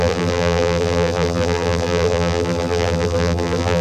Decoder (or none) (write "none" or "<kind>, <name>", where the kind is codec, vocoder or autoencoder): vocoder, BigVGAN v2